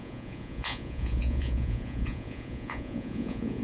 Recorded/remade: remade